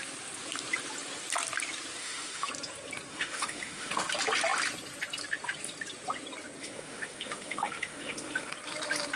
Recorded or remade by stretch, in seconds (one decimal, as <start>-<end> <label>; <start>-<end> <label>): 0.0-2.0 recorded; 2.0-2.5 remade; 2.5-3.1 recorded; 3.1-3.9 remade; 3.9-6.6 recorded; 6.6-8.5 remade; 8.5-9.2 recorded